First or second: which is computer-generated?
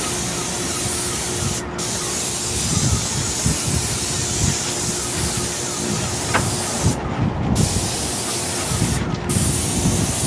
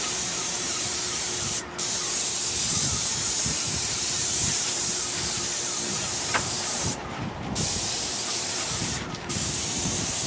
second